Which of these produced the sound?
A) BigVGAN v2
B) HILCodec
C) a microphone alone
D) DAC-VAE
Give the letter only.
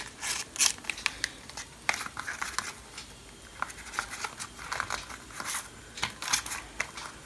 C